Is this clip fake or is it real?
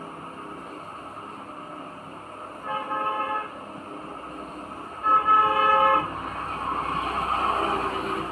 real